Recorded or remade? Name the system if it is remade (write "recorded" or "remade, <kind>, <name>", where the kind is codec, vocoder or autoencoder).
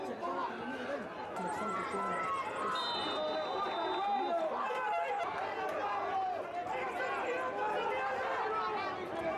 recorded